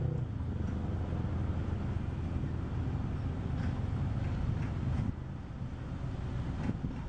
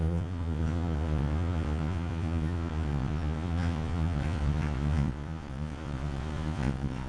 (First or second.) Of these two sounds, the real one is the first